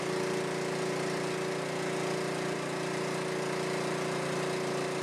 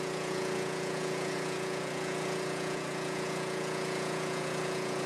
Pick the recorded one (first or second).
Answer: first